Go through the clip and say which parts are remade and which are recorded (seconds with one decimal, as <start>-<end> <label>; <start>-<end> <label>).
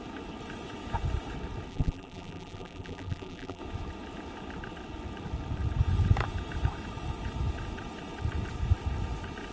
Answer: 0.0-1.7 recorded; 1.7-3.6 remade; 3.6-9.5 recorded